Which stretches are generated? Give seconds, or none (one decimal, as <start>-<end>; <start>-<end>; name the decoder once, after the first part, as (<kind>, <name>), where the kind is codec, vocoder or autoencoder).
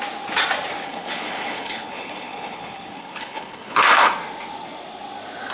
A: 0.8-4.1 (codec, HILCodec)